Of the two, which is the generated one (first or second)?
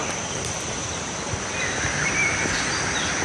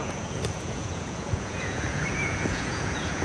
second